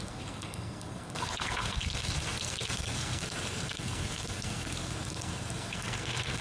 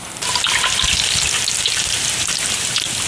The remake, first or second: first